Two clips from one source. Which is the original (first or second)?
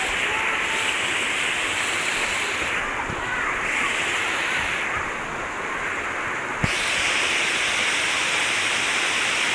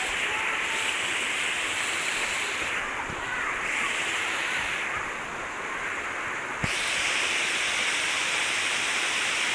first